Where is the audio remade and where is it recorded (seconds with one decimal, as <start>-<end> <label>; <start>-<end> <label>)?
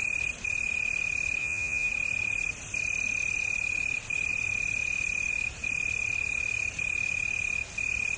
0.0-1.4 recorded; 1.4-1.9 remade; 1.9-8.2 recorded